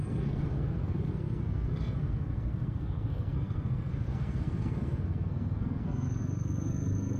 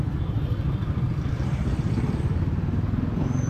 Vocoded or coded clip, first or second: first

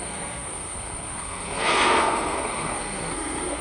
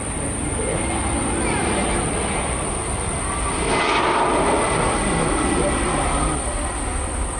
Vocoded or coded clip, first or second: first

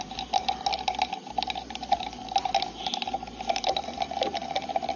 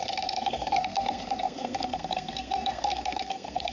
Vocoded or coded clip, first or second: second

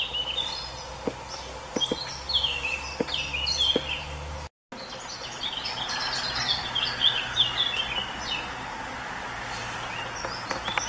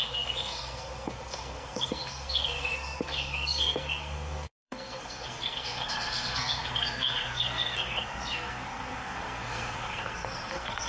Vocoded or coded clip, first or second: second